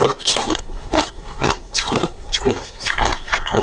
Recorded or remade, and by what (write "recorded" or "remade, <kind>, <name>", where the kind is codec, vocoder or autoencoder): remade, codec, SNAC